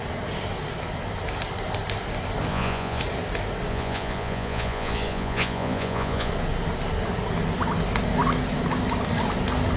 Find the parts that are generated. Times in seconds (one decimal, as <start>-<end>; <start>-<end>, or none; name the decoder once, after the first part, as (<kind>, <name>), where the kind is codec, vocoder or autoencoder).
2.5-3.0 (vocoder, Vocos); 3.7-6.3